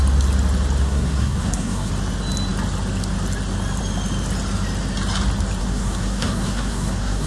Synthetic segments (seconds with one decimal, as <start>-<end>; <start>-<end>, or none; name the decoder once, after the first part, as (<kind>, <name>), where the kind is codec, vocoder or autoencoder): 0.8-1.9 (codec, SNAC); 5.6-7.3